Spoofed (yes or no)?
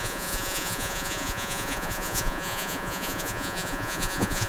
yes